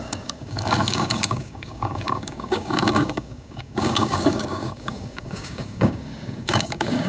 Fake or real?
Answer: fake